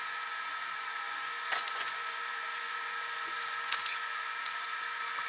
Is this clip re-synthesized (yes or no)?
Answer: yes